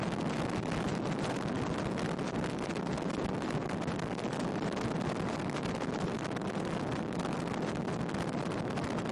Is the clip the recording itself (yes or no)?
yes